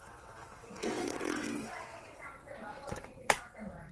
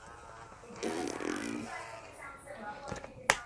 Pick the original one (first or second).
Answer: second